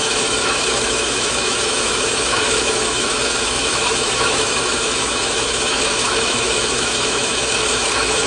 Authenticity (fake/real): fake